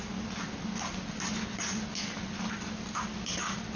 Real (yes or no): yes